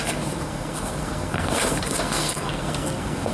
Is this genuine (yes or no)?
no